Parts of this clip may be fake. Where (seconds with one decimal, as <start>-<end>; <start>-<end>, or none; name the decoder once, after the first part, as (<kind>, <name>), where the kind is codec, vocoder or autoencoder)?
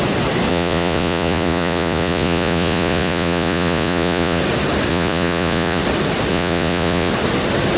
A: 0.5-4.4 (vocoder, Vocos); 4.9-5.8; 6.3-7.1